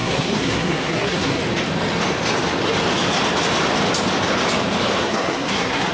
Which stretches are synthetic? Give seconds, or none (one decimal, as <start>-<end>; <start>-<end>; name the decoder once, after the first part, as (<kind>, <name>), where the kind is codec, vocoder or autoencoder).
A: 0.0-1.4 (codec, SNAC); 5.0-5.9